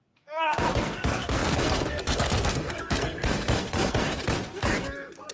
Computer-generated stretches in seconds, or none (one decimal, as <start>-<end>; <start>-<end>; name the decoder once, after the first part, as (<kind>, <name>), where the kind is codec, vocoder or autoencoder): 0.0-5.3 (codec, SNAC)